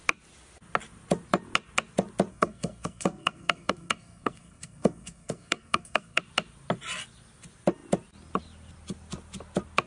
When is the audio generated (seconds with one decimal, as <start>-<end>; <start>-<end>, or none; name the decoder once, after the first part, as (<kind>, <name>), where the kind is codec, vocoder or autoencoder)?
2.3-6.2 (codec, SNAC)